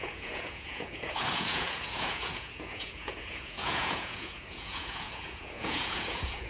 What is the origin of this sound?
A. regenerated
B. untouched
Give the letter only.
A